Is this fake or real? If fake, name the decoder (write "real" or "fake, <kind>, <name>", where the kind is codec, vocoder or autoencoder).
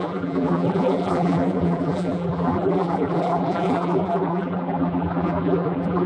fake, vocoder, BigVGAN v2